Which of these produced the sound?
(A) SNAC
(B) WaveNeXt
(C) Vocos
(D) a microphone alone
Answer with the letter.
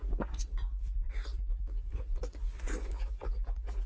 D